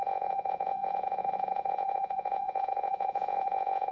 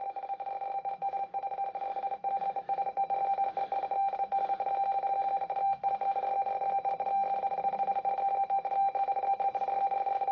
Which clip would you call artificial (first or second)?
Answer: first